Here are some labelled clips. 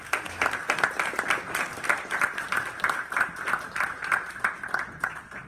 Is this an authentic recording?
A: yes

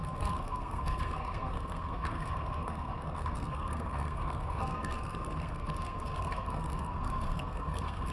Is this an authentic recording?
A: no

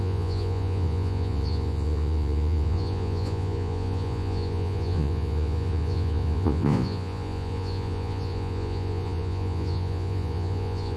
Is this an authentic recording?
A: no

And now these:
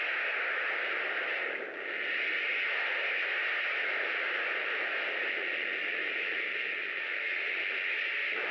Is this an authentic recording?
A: yes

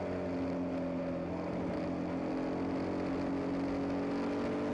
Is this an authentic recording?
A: yes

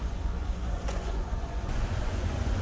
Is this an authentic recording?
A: no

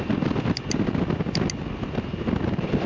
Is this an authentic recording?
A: yes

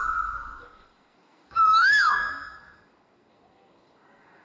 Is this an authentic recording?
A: no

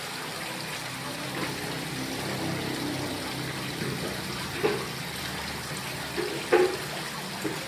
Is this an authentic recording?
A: yes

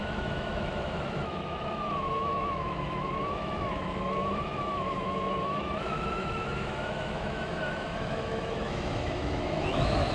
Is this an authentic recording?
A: no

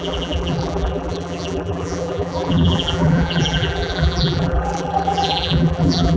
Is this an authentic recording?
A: no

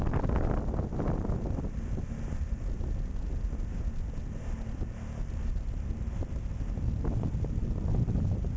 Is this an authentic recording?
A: yes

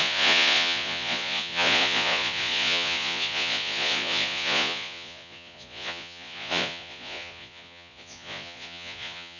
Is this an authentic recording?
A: no